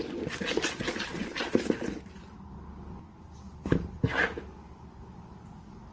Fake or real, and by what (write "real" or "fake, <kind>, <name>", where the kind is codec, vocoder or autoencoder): real